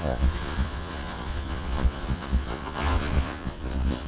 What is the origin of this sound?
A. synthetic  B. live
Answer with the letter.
A